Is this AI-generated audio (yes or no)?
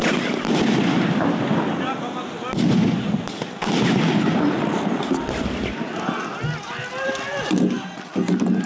no